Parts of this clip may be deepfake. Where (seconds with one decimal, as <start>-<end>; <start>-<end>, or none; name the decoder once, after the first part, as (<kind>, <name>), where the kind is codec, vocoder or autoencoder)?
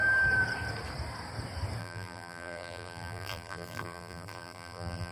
1.8-5.1 (vocoder, BigVGAN v2)